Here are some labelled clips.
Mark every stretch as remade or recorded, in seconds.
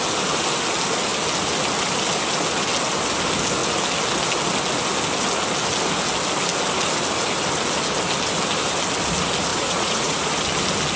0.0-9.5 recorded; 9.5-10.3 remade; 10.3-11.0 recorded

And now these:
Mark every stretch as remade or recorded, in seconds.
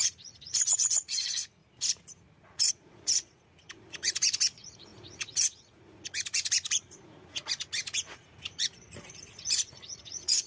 0.0-10.5 remade